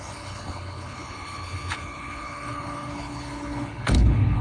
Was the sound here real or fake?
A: fake